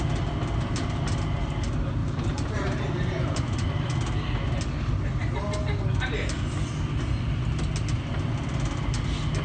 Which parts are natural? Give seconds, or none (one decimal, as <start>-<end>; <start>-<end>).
0.0-2.0; 3.8-9.4